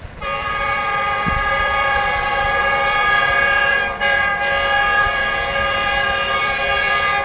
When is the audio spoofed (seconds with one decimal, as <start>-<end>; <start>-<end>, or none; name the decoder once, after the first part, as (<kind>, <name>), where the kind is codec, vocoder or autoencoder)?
0.0-4.3 (vocoder, BigVGAN v2); 5.0-7.2